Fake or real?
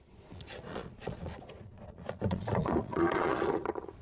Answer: fake